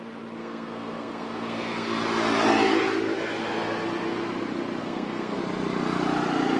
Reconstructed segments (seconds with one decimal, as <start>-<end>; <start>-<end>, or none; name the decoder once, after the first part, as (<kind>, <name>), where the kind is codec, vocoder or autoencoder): 0.4-1.9 (codec, SNAC); 4.8-5.4